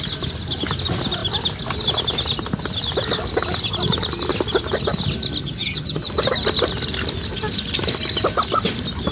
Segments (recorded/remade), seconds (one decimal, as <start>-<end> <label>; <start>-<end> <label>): 0.0-5.4 recorded; 5.4-6.1 remade; 6.1-9.1 recorded